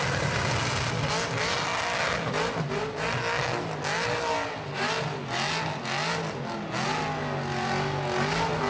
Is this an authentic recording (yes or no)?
yes